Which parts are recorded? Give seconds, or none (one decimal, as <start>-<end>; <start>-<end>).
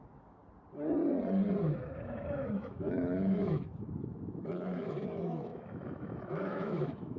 0.4-1.6